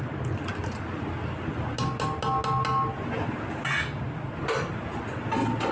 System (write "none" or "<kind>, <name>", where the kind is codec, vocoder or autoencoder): none